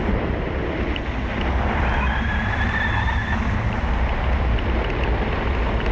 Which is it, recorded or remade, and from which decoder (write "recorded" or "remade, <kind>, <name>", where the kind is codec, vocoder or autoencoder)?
recorded